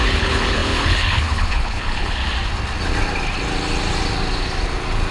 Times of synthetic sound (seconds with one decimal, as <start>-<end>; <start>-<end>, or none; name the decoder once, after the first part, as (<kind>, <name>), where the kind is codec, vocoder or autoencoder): 0.0-2.2 (codec, HILCodec)